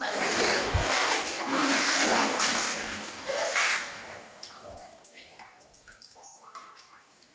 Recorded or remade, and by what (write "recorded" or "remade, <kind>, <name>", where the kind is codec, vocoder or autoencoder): remade, codec, DAC